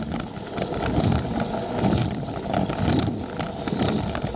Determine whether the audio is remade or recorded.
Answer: recorded